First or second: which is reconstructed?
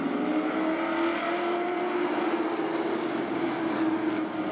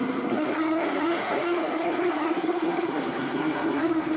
second